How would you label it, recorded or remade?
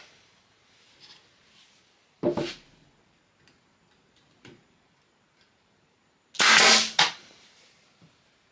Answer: remade